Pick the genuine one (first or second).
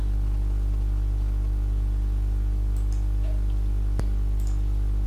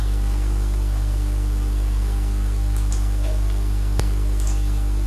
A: first